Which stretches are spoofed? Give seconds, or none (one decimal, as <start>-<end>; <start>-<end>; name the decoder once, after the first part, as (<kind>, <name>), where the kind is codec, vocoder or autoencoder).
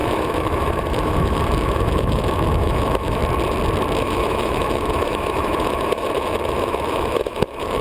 0.0-3.2 (autoencoder, DAC-VAE); 4.0-7.8